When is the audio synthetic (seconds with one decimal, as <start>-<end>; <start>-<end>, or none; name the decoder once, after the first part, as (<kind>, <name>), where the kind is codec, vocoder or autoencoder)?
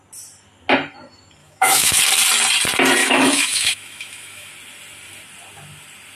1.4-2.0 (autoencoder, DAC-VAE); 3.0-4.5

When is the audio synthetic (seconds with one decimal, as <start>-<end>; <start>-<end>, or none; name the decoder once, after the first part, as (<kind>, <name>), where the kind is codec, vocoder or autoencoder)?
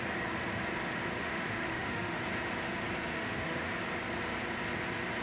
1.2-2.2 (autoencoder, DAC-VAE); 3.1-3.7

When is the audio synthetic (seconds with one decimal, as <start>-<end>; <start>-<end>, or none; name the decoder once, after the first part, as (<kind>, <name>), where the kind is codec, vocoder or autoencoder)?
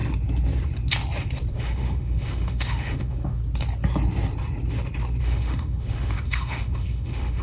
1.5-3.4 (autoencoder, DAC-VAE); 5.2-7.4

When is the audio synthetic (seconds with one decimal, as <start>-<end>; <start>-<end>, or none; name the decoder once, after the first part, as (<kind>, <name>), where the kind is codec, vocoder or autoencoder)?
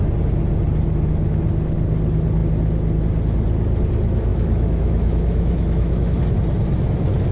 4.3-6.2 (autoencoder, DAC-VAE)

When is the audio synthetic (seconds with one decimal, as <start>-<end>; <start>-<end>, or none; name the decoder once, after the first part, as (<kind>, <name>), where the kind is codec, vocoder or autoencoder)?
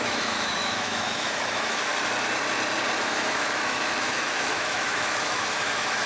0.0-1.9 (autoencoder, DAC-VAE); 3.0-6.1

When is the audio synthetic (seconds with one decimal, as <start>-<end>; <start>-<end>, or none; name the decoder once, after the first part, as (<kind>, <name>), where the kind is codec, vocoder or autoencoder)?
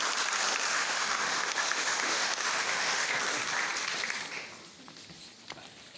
0.7-3.1 (autoencoder, DAC-VAE)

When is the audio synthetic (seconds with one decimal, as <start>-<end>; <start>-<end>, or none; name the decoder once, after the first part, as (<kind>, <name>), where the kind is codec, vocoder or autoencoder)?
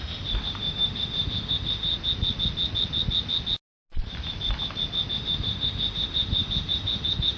0.0-1.9 (autoencoder, DAC-VAE); 5.1-7.4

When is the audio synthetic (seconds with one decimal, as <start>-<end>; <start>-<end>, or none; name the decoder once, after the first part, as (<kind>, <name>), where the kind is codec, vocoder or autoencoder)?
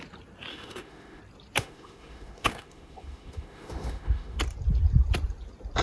0.5-1.2 (autoencoder, DAC-VAE); 1.6-4.4